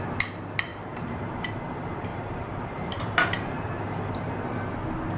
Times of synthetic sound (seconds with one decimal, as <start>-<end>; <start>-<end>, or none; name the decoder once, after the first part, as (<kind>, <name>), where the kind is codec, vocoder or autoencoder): 0.7-1.5 (vocoder, BigVGAN v2); 2.1-3.6